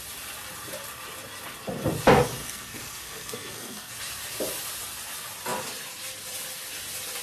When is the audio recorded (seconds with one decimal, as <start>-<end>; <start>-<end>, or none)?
0.0-2.4; 3.9-7.2